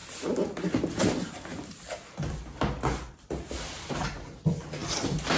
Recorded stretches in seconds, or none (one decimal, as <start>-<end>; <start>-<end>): 0.0-1.5; 2.6-4.8